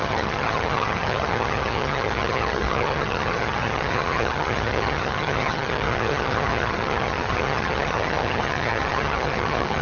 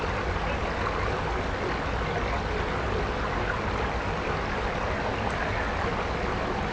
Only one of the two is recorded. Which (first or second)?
second